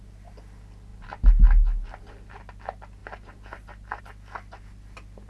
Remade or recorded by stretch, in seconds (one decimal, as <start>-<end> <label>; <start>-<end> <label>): 0.0-3.0 recorded; 3.0-4.0 remade; 4.0-5.3 recorded